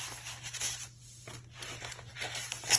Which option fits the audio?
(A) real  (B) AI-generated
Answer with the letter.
A